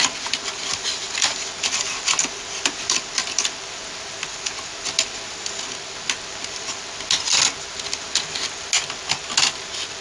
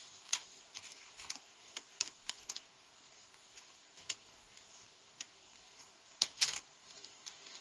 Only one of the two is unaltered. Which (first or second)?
first